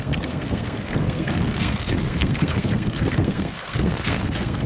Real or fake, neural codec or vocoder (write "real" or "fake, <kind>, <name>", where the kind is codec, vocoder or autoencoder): fake, codec, SNAC